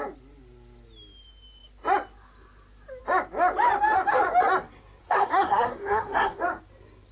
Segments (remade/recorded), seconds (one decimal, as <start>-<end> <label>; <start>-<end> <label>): 0.0-5.0 recorded; 5.0-6.4 remade; 6.4-7.1 recorded